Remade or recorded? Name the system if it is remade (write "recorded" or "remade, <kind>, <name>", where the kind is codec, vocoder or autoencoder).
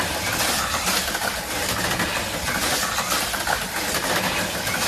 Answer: recorded